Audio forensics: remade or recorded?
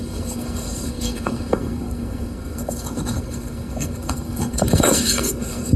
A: remade